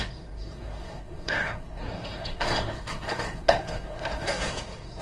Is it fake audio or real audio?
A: fake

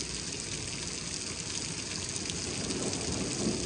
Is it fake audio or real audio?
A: real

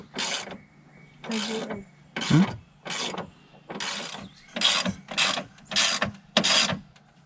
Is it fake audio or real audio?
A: real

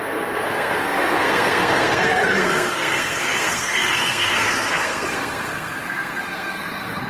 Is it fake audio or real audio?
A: fake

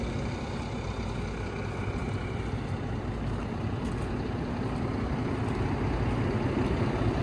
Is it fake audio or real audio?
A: real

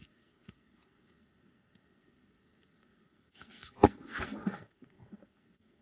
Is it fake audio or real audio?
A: fake